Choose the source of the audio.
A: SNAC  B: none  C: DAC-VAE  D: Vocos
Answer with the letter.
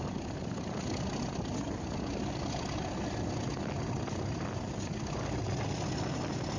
B